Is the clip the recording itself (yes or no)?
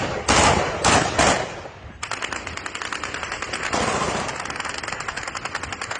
yes